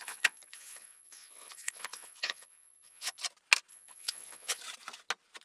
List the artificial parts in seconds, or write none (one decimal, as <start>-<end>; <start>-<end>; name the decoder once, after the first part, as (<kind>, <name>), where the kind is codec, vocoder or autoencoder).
0.0-3.2 (vocoder, Vocos); 3.7-4.6